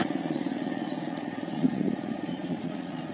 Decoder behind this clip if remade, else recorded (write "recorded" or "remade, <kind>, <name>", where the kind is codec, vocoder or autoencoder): remade, vocoder, Vocos